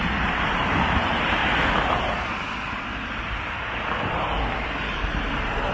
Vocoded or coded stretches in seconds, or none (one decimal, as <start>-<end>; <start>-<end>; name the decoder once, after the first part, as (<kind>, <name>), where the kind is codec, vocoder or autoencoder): 0.0-1.4 (vocoder, BigVGAN v2); 4.8-5.7